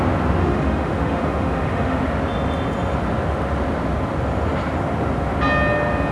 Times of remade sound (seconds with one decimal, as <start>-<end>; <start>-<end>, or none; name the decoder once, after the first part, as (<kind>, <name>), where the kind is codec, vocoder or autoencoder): 0.4-2.0 (autoencoder, DAC-VAE)